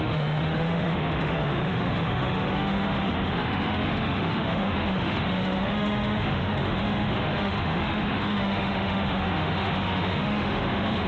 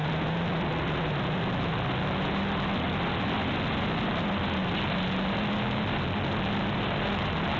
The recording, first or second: second